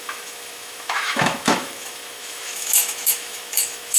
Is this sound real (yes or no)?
no